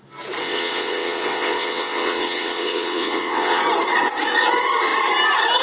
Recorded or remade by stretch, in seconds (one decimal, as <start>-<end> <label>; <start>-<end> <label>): 0.0-0.4 recorded; 0.4-3.6 remade; 3.6-5.6 recorded